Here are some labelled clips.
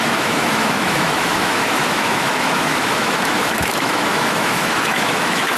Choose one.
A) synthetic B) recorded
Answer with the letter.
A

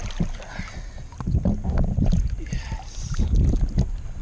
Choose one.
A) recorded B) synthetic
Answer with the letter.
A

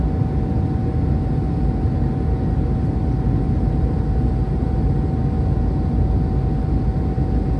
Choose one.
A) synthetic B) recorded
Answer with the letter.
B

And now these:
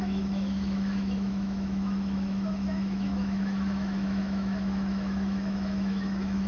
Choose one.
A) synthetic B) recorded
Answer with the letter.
A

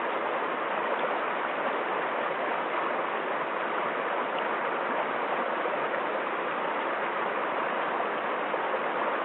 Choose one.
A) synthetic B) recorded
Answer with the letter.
B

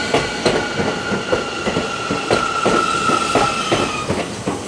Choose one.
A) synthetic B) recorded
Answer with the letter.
B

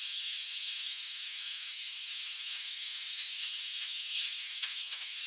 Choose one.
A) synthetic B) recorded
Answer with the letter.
A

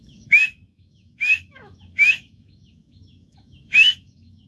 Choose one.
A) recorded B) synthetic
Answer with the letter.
B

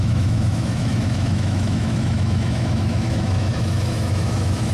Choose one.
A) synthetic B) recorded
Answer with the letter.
A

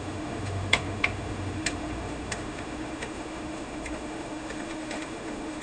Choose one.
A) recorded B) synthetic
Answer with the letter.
B